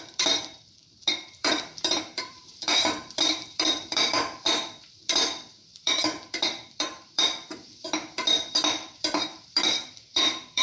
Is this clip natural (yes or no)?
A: no